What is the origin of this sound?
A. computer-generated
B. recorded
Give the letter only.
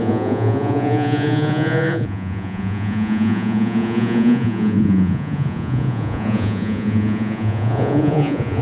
A